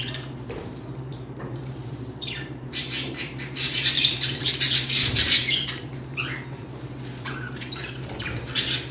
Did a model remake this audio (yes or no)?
yes